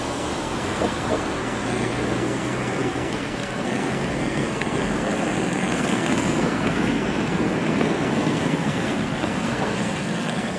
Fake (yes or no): yes